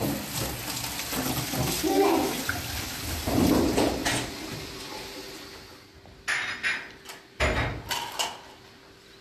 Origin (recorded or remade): recorded